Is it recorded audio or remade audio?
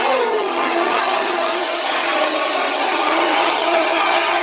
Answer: remade